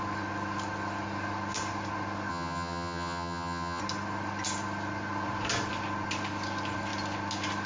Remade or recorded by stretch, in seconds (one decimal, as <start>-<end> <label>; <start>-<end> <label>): 0.0-2.3 recorded; 2.3-3.8 remade; 3.8-7.7 recorded